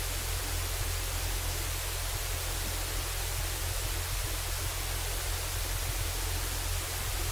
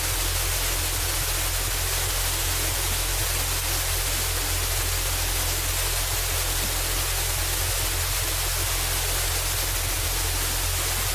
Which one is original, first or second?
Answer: second